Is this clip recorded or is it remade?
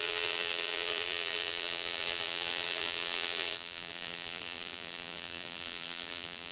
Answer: remade